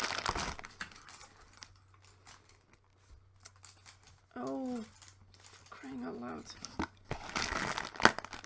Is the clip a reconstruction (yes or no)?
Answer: no